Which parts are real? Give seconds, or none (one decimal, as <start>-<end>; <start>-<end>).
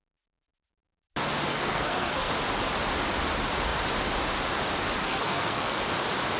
0.0-1.5; 2.3-5.0; 5.8-6.4